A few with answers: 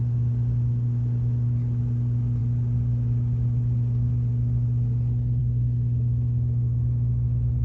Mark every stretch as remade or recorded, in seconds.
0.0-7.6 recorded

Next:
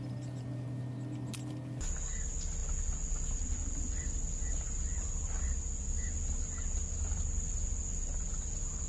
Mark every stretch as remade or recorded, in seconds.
0.0-8.9 recorded

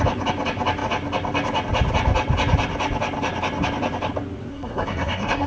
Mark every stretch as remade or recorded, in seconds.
0.0-4.5 recorded; 4.5-5.5 remade

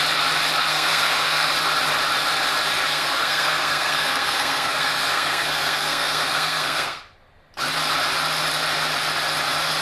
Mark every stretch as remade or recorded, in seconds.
0.0-0.7 recorded; 0.7-1.5 remade; 1.5-2.9 recorded; 2.9-7.0 remade; 7.0-9.8 recorded

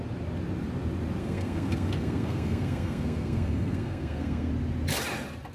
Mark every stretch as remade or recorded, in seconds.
0.0-1.2 recorded; 1.2-4.5 remade; 4.5-5.5 recorded

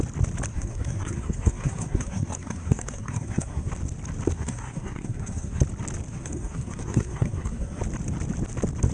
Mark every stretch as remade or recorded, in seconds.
0.0-0.5 recorded; 0.5-3.7 remade; 3.7-4.3 recorded; 4.3-5.6 remade; 5.6-6.1 recorded; 6.1-7.8 remade; 7.8-8.9 recorded

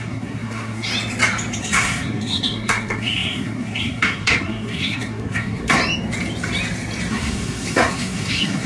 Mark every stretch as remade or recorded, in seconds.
0.0-0.9 remade; 0.9-1.6 recorded; 1.6-5.8 remade; 5.8-7.1 recorded; 7.1-8.7 remade

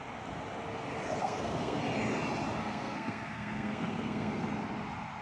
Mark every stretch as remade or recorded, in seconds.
0.0-1.2 recorded; 1.2-1.8 remade; 1.8-2.6 recorded; 2.6-4.5 remade; 4.5-5.2 recorded